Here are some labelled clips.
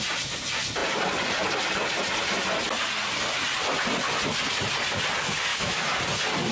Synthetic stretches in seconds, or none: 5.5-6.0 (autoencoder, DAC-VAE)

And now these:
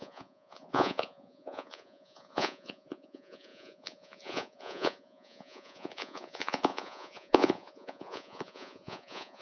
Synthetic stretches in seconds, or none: 0.0-9.4 (vocoder, Vocos)

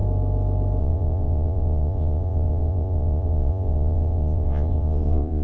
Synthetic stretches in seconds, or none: 0.8-5.4 (vocoder, Vocos)

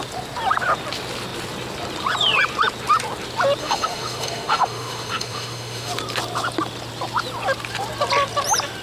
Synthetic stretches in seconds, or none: 3.6-5.9 (autoencoder, DAC-VAE)

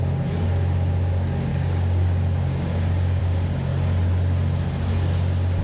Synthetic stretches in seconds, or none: 1.5-3.2 (codec, DAC)

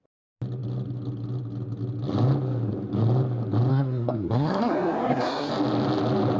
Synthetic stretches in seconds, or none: 3.7-5.5 (codec, SNAC)

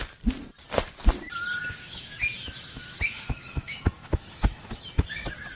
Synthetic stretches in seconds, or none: 1.6-4.8 (autoencoder, DAC-VAE)